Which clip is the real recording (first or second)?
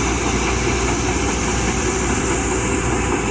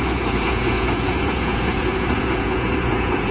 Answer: first